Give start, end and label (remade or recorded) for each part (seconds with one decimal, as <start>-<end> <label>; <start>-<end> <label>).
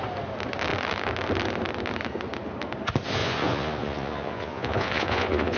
0.0-3.2 recorded; 3.2-5.6 remade